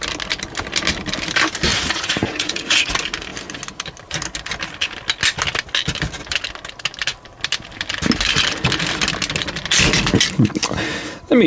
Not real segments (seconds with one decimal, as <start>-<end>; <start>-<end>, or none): 1.7-2.9

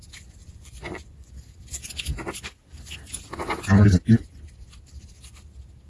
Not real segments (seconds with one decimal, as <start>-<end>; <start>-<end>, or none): 0.4-1.3

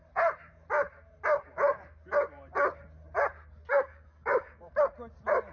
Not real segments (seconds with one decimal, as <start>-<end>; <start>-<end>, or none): 3.7-4.7

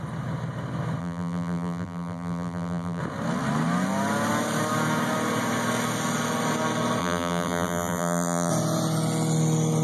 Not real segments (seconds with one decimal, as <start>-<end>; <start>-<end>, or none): 1.0-3.0; 7.0-8.5

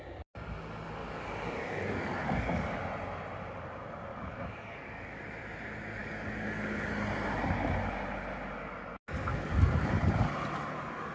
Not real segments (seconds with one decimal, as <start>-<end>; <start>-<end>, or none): 1.0-2.8; 4.1-5.2; 6.0-6.9; 9.3-9.9

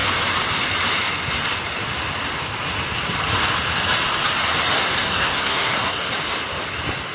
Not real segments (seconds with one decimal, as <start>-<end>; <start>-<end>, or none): 5.0-6.1

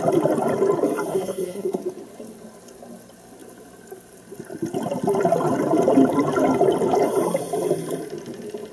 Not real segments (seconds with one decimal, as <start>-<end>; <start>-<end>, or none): 1.1-1.8

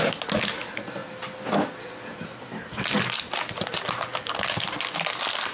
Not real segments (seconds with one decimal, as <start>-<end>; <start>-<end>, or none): none